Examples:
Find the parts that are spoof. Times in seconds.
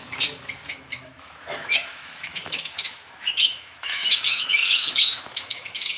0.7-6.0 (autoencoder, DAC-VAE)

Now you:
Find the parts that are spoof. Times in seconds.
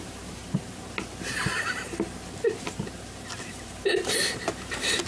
0.0-0.4 (vocoder, BigVGAN v2); 3.5-5.1